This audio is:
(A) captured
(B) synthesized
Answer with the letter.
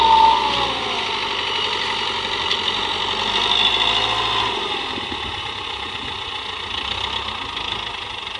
A